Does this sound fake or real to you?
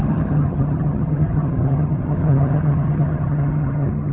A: fake